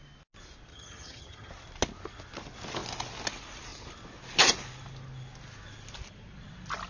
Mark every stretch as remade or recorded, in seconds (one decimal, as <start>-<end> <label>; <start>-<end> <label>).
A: 0.0-0.7 recorded; 0.7-1.5 remade; 1.5-6.9 recorded